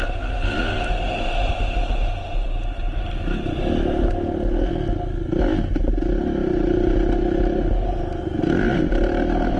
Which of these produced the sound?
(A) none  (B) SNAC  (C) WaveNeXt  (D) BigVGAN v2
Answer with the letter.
A